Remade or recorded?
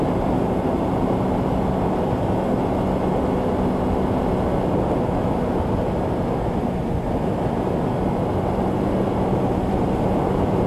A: recorded